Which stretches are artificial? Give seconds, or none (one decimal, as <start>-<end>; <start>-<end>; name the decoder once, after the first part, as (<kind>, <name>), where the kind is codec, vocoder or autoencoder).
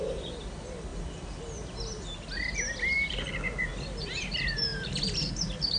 3.7-4.3 (vocoder, BigVGAN v2); 4.7-5.3